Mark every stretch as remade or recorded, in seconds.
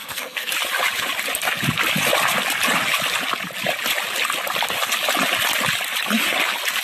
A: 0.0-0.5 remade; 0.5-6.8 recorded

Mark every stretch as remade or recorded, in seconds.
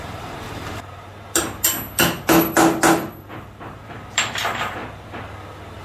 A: 0.0-1.1 remade; 1.1-3.8 recorded; 3.8-4.8 remade; 4.8-5.8 recorded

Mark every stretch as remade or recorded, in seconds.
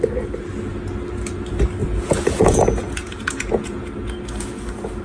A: 0.0-1.8 recorded; 1.8-3.9 remade; 3.9-5.0 recorded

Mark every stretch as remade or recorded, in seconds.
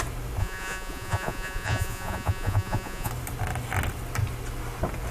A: 0.0-0.4 recorded; 0.4-3.1 remade; 3.1-5.1 recorded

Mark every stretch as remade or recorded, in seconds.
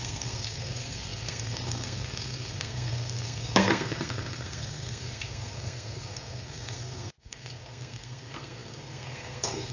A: 0.0-9.7 remade